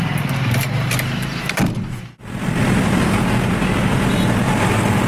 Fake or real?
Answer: real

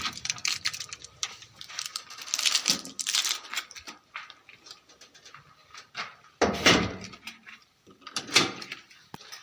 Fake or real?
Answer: real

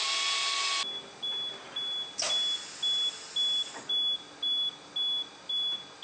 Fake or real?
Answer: real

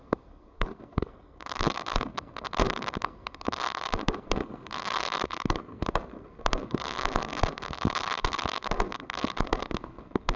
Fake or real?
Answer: fake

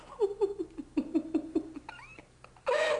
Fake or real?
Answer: real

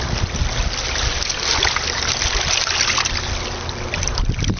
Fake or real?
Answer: real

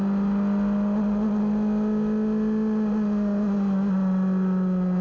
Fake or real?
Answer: real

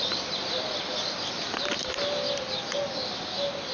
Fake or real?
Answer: real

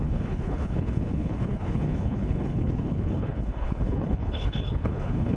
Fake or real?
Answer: fake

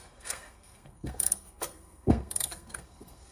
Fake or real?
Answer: fake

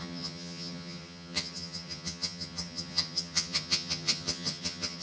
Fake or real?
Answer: fake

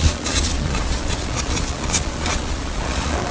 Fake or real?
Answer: fake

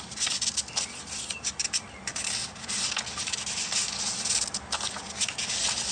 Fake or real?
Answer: real